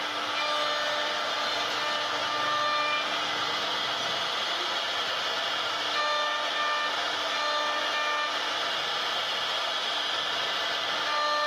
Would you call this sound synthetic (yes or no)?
no